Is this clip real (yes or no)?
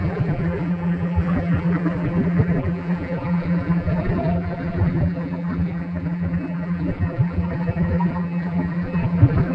no